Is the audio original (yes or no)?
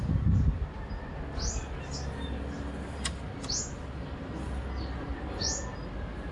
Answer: yes